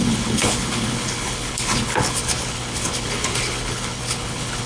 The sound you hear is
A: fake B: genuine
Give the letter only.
A